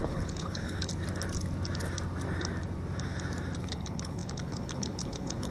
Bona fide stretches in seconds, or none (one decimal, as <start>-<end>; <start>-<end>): 0.9-3.6